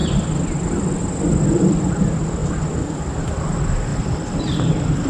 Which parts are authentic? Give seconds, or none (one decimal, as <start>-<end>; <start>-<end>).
0.0-5.1